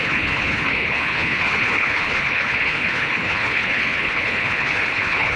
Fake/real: fake